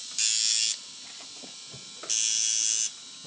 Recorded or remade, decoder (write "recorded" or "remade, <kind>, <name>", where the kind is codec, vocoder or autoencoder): recorded